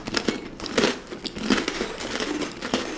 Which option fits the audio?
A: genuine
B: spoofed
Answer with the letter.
A